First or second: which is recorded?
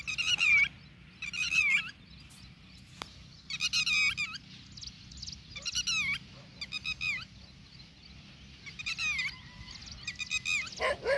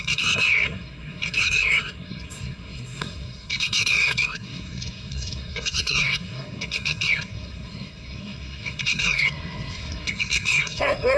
first